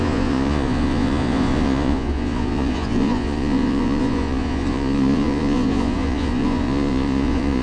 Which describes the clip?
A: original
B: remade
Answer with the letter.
B